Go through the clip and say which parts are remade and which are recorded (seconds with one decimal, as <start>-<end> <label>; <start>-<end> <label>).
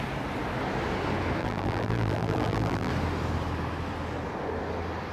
0.0-1.4 recorded; 1.4-2.9 remade; 2.9-5.1 recorded